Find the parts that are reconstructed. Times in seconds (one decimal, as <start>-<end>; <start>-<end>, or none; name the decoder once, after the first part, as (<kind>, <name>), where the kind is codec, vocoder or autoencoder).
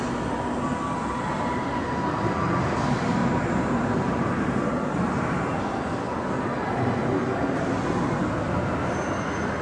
3.2-5.8 (vocoder, BigVGAN v2)